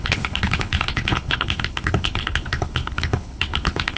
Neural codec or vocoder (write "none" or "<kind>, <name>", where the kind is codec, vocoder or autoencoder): codec, HILCodec